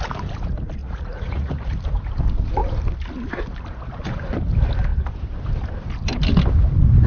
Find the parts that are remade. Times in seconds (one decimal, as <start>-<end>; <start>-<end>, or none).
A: 0.8-1.7